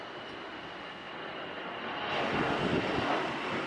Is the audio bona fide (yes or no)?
yes